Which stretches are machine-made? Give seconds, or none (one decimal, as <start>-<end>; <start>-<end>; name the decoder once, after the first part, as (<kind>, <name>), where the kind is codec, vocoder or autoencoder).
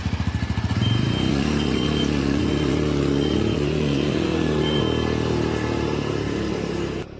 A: 1.3-4.8 (vocoder, Vocos)